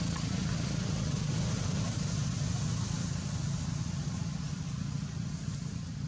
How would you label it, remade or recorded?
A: recorded